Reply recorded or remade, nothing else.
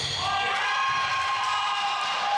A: recorded